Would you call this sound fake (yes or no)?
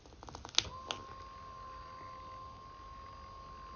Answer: no